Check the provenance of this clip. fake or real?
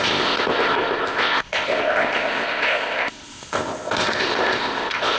fake